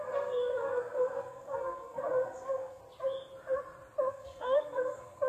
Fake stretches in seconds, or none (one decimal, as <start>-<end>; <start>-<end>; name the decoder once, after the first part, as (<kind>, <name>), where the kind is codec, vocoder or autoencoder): 0.0-2.8 (codec, SNAC); 4.1-5.3